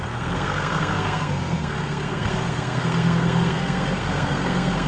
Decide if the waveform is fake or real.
fake